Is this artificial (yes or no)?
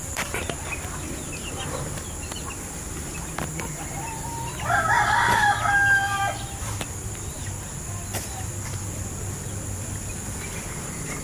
no